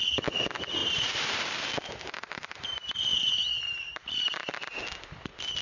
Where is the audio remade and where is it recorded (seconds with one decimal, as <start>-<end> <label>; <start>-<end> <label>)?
0.0-0.8 recorded; 0.8-1.7 remade; 1.7-3.1 recorded; 3.1-4.3 remade; 4.3-5.6 recorded